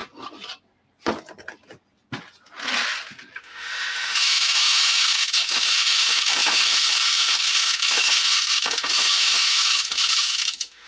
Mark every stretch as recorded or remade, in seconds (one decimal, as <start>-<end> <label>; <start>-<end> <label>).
0.0-3.4 recorded; 3.4-10.9 remade